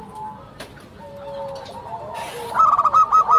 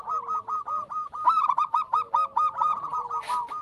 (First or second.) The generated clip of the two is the second